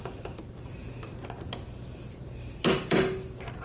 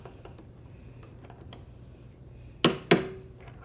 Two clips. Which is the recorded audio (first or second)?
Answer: second